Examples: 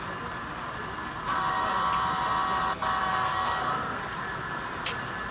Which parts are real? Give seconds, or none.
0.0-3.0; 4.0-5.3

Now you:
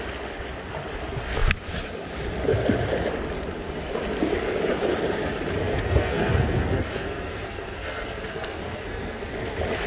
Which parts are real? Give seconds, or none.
0.0-5.6; 9.2-9.9